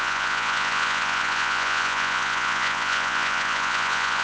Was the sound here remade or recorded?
remade